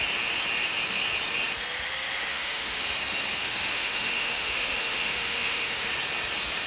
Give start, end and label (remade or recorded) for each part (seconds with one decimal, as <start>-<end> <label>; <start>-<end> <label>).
0.0-2.3 recorded; 2.3-2.8 remade; 2.8-3.4 recorded; 3.4-5.9 remade; 5.9-6.7 recorded